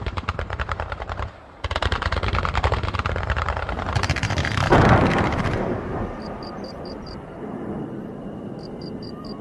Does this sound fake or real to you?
fake